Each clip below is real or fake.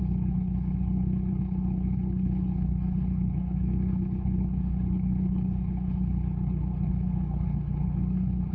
fake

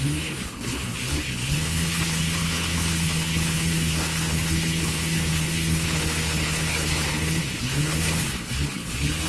fake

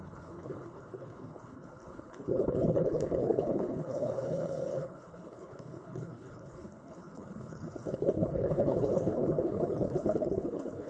fake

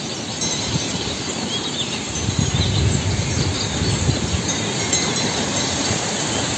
real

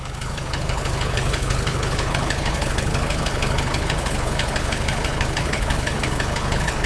fake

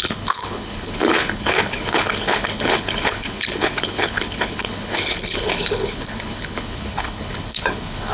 fake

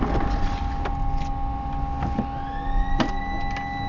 real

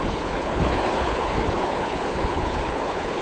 fake